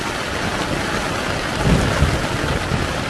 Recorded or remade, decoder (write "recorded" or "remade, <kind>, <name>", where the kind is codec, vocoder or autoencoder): recorded